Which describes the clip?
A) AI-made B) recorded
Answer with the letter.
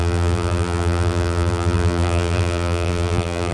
A